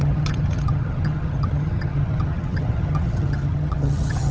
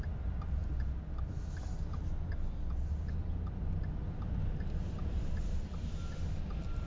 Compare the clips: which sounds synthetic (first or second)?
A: first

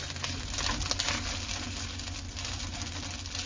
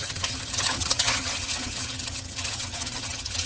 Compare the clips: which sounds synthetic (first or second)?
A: second